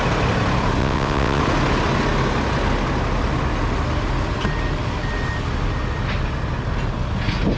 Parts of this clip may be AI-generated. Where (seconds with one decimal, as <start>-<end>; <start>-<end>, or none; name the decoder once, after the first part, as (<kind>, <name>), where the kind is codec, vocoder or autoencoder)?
0.8-1.4 (vocoder, WaveNeXt)